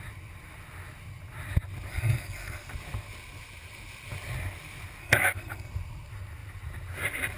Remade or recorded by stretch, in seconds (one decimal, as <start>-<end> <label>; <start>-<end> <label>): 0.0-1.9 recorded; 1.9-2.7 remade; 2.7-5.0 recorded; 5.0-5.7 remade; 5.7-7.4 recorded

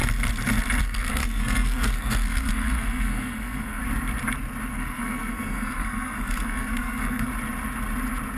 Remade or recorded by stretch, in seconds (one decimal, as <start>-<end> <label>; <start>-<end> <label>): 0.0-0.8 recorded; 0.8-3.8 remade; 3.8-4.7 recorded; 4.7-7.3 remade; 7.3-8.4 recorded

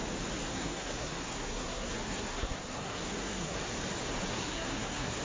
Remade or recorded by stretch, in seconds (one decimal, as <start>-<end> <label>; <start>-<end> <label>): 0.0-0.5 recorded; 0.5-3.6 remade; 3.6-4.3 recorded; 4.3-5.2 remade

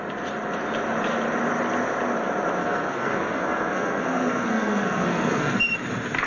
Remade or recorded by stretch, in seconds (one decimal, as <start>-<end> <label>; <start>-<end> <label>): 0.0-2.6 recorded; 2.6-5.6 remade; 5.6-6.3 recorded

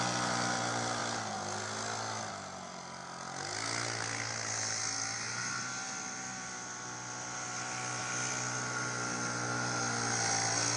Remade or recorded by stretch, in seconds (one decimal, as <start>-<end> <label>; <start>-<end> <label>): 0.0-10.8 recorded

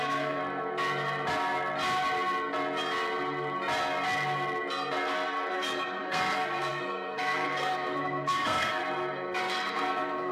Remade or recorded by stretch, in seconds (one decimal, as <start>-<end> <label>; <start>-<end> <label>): 0.0-0.4 remade; 0.4-5.5 recorded; 5.5-8.8 remade; 8.8-9.4 recorded; 9.4-10.3 remade

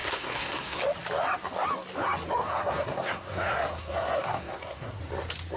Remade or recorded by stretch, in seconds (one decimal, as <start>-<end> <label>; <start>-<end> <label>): 0.0-0.8 remade; 0.8-2.4 recorded; 2.4-5.0 remade; 5.0-5.6 recorded

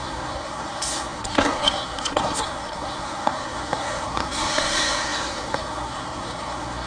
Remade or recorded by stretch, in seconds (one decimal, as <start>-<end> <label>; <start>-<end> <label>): 0.0-6.9 remade